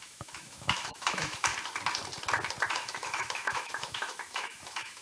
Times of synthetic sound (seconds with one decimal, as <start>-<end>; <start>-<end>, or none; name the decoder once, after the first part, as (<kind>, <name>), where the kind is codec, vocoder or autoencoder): 0.0-1.5 (autoencoder, DAC-VAE); 2.7-5.0